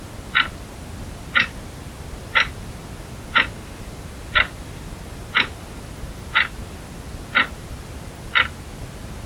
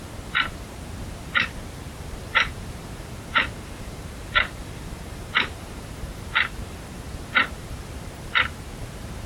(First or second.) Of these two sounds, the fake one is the second